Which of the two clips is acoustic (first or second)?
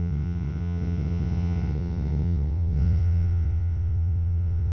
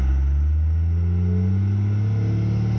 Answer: second